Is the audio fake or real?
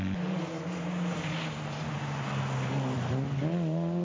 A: real